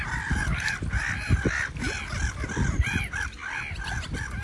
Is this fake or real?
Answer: real